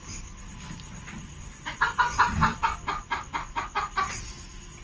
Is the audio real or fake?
real